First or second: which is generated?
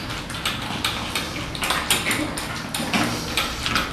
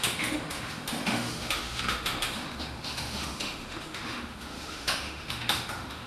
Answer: second